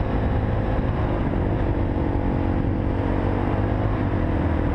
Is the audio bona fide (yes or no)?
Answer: yes